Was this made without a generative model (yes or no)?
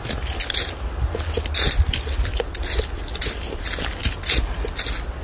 yes